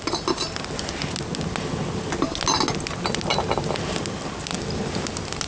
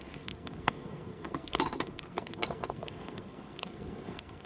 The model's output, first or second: second